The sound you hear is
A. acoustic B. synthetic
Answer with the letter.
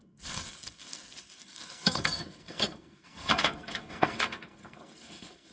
B